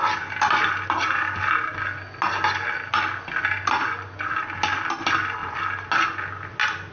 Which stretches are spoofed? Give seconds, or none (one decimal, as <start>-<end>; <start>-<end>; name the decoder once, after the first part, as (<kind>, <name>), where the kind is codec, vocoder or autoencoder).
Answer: none